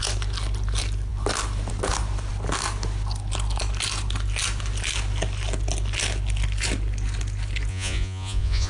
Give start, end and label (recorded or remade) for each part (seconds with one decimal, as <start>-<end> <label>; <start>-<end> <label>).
0.0-7.7 recorded; 7.7-8.7 remade